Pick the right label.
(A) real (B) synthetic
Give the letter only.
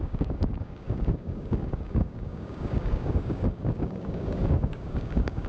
B